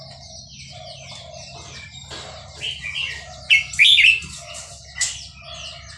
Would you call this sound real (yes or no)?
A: yes